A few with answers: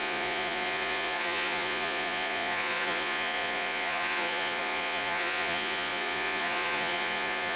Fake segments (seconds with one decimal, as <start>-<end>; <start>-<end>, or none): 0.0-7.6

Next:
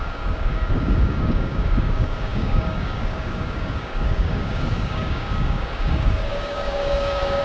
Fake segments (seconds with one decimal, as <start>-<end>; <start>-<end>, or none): 0.0-7.4

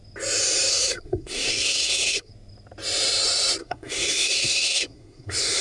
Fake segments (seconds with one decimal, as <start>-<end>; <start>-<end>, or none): 0.7-2.3; 3.6-5.6